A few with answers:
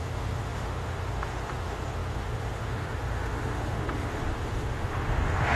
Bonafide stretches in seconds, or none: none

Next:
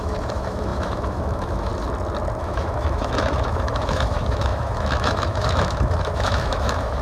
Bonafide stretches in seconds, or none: 1.7-2.4

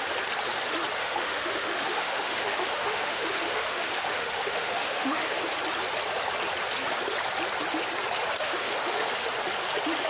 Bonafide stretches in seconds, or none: 0.0-1.0; 5.4-8.4; 9.1-10.1

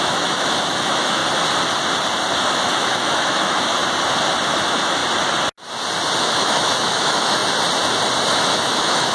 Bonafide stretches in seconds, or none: 1.2-2.4; 3.8-4.5; 5.0-6.2; 7.4-8.3

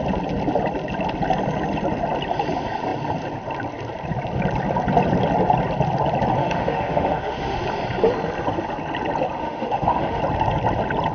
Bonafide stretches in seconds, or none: 0.0-6.4; 7.6-9.4; 10.2-11.1

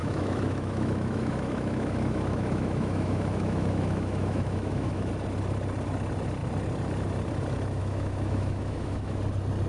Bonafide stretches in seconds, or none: 5.1-7.8; 9.2-9.7